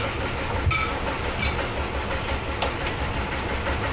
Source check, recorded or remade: recorded